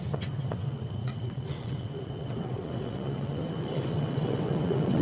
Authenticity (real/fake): fake